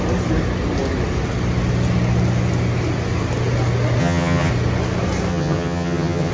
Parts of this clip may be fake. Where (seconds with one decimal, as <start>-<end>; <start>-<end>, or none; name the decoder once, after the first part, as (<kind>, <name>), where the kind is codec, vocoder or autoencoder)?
4.0-4.5 (vocoder, HiFi-GAN); 5.3-6.3